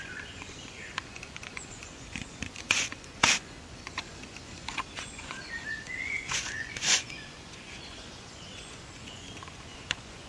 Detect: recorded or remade remade